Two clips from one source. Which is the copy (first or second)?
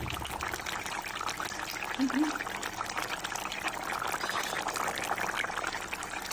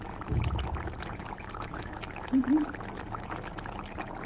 second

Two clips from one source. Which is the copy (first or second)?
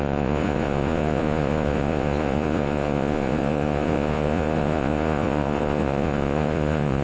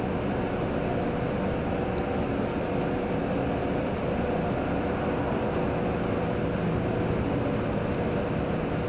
first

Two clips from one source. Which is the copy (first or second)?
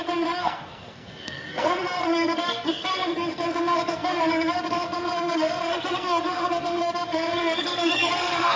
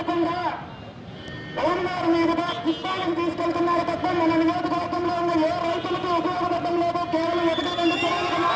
first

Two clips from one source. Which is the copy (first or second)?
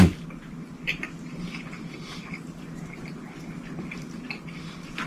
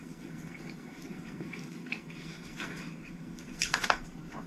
second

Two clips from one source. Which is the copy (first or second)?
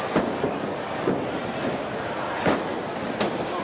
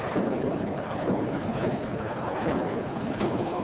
second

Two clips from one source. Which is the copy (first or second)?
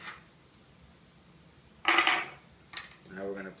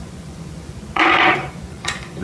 second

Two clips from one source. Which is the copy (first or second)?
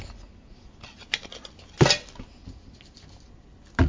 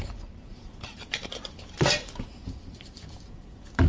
second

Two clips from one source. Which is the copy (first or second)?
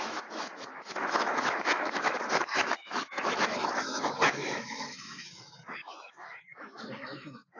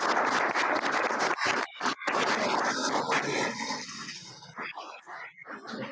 first